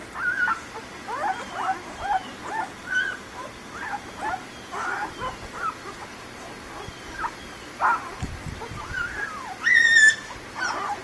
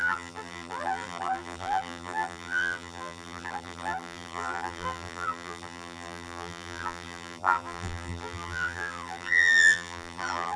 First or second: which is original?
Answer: first